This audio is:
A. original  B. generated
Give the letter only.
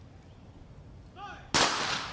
A